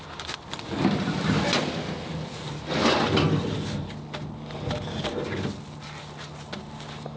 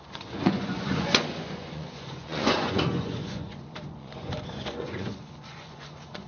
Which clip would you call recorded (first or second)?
first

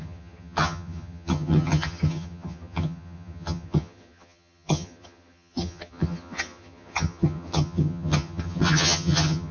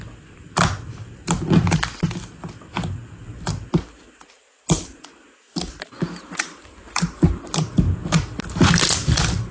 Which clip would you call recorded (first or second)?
second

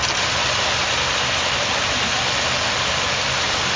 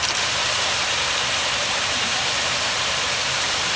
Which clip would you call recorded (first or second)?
first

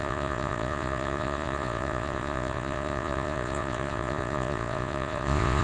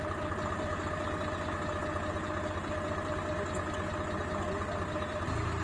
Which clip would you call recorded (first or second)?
second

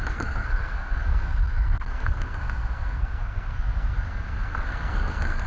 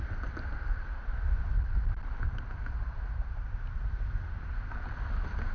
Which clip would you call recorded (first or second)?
second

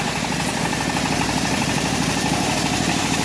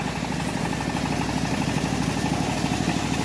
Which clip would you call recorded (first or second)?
second